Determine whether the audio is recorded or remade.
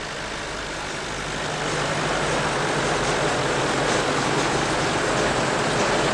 recorded